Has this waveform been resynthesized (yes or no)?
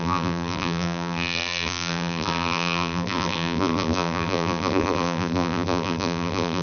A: yes